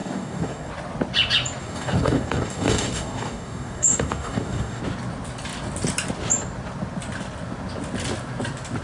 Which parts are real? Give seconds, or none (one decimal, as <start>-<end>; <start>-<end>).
0.7-1.6; 4.8-8.8